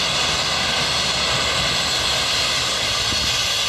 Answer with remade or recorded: recorded